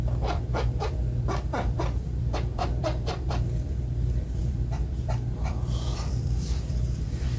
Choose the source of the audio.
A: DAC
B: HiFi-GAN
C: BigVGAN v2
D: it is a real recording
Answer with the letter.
C